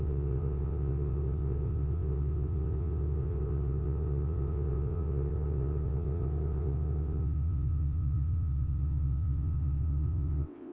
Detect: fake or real fake